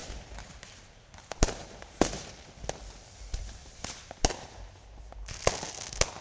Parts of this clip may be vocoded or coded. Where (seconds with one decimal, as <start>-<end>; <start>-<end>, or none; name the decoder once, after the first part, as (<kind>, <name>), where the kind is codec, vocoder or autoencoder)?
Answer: 0.0-2.2 (vocoder, BigVGAN v2); 3.6-4.5